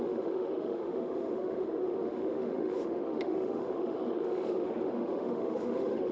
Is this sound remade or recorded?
remade